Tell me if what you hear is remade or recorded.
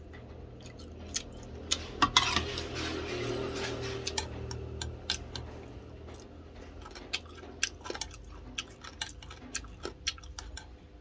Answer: recorded